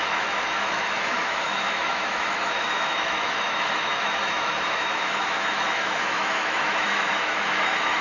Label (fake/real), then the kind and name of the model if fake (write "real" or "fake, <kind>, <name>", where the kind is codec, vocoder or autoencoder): fake, autoencoder, DAC-VAE